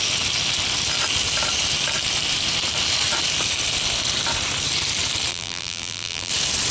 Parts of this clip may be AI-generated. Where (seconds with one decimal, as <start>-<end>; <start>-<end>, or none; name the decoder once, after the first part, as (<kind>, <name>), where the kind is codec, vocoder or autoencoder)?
5.3-6.3 (vocoder, BigVGAN v2)